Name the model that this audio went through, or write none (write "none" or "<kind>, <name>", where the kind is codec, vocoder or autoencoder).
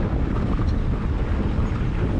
none